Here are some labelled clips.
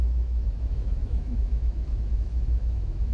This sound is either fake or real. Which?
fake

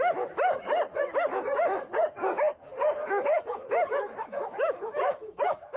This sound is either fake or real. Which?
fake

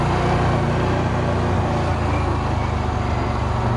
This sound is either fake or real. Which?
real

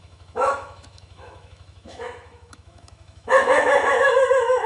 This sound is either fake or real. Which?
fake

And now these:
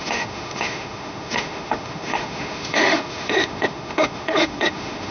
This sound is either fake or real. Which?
fake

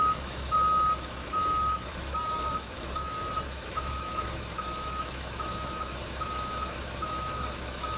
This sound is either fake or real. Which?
fake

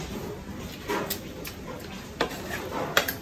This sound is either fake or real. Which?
real